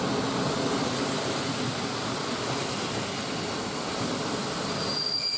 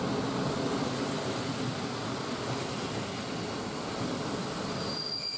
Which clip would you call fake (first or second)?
first